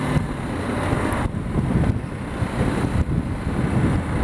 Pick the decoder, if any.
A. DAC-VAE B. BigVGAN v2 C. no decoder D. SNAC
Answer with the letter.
C